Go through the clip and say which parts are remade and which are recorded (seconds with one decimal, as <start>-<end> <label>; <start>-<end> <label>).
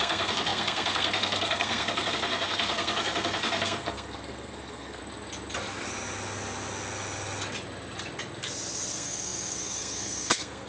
0.0-5.0 remade; 5.0-8.9 recorded; 8.9-10.7 remade